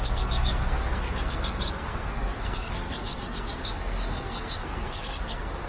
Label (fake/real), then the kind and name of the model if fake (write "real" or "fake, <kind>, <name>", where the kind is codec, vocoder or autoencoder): fake, codec, SNAC